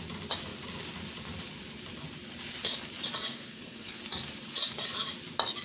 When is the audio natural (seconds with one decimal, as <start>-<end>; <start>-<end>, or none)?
0.0-3.3; 4.0-5.6